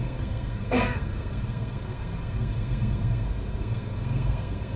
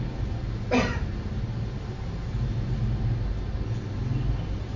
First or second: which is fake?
first